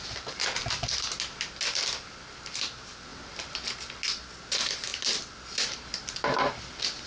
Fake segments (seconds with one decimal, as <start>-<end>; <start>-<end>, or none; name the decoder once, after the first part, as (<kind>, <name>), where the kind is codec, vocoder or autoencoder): none